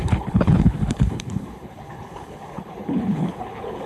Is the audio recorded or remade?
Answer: remade